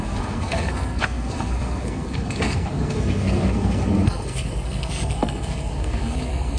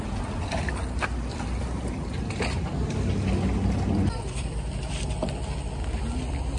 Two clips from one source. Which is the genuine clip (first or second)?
second